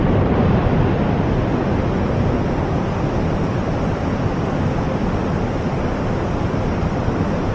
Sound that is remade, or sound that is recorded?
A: recorded